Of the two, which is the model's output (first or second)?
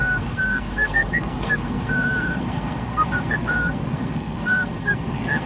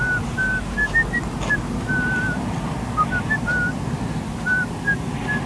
first